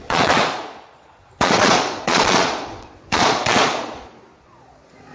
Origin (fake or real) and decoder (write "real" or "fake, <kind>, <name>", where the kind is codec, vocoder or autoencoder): fake, vocoder, Vocos